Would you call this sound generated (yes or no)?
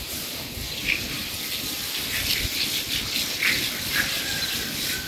no